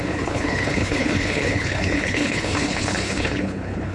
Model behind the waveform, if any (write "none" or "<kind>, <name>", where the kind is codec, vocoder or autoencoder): codec, HILCodec